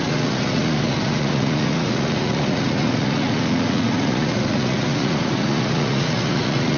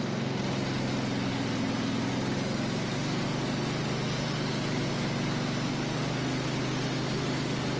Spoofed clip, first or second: first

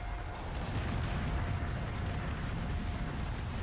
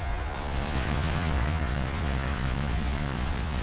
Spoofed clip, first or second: second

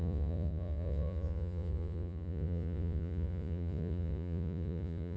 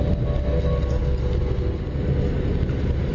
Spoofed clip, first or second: first